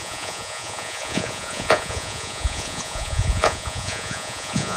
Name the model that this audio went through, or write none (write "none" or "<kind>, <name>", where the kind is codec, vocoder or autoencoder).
vocoder, Vocos